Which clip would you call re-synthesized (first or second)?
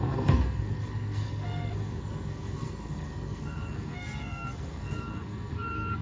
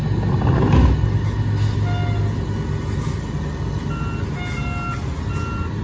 first